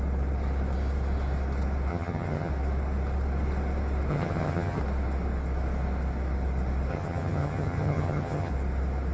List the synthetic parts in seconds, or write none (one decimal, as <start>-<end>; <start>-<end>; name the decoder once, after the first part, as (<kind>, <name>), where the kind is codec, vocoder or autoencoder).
1.9-2.5 (vocoder, HiFi-GAN); 4.1-4.8; 6.9-8.5